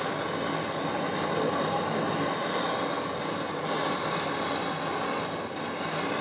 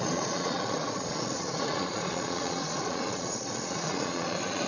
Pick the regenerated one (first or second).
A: second